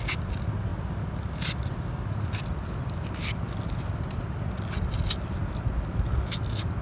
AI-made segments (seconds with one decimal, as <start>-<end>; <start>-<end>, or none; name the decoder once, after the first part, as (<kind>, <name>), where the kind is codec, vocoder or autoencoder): none